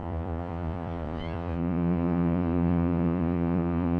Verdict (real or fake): fake